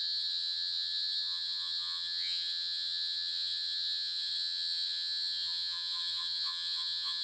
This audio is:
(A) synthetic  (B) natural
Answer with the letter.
A